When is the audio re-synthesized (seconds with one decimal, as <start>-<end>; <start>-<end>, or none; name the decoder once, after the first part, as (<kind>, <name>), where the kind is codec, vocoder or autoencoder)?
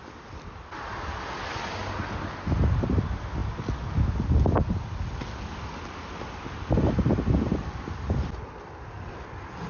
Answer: none